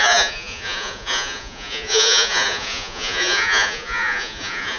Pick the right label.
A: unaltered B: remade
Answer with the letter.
B